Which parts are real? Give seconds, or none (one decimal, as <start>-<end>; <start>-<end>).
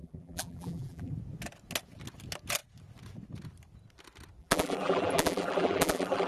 1.1-4.4